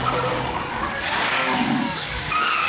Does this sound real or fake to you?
fake